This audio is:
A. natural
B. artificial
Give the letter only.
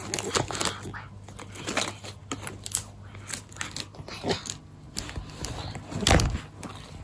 A